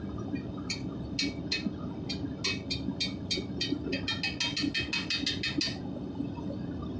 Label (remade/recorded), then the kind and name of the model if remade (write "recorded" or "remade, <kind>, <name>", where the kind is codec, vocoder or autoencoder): recorded